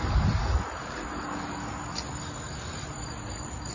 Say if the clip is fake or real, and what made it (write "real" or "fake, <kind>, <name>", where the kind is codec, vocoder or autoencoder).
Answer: real